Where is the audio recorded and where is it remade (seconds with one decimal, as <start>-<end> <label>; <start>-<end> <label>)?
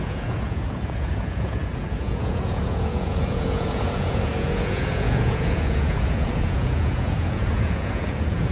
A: 0.0-8.5 remade